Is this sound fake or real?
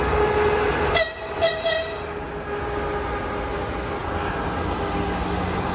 real